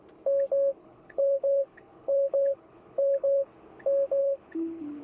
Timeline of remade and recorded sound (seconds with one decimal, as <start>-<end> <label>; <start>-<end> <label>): 0.0-0.8 recorded; 0.8-3.6 remade; 3.6-4.2 recorded; 4.2-5.0 remade